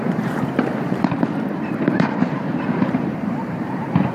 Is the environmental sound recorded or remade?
remade